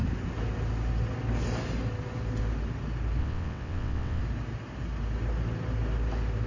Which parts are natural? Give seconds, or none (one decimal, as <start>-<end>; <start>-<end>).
0.0-3.2; 4.2-6.5